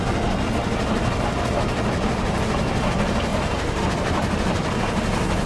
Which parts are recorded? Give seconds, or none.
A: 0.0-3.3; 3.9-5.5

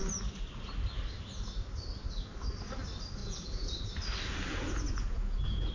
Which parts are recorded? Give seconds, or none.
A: 0.0-3.2; 3.8-4.5

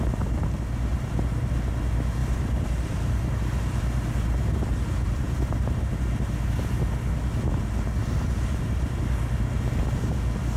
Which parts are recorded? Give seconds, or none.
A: 0.0-2.2; 5.9-8.0; 9.0-10.6

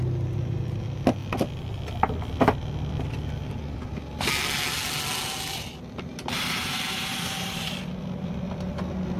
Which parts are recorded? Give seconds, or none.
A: 0.0-6.1; 7.8-9.2

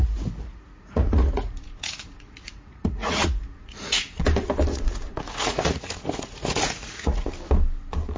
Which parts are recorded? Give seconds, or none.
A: 4.2-4.7; 7.3-8.2

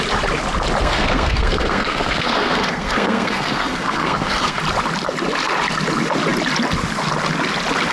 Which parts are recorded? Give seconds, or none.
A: 0.0-0.8; 4.6-7.9

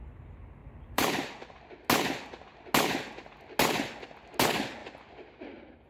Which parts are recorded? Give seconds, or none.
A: 0.0-0.6; 1.6-5.9